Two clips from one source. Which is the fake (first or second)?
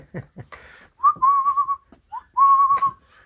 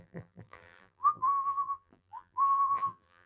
second